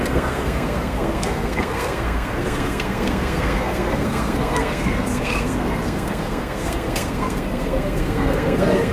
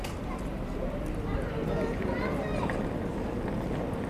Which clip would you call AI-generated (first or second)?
first